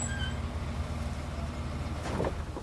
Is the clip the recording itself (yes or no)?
yes